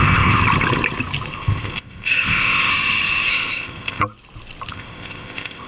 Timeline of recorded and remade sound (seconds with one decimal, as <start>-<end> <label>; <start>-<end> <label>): 0.0-0.4 remade; 0.4-1.3 recorded; 1.3-2.7 remade; 2.7-3.3 recorded; 3.3-4.0 remade; 4.0-4.7 recorded; 4.7-5.7 remade